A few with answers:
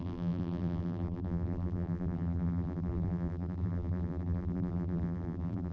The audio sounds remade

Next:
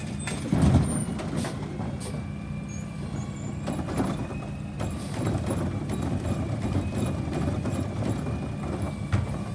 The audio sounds recorded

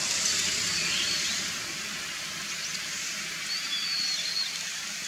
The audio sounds recorded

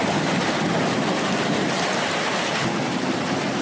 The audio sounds remade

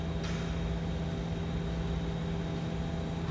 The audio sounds recorded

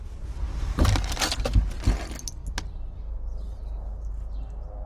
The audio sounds recorded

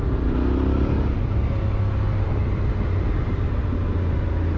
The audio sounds recorded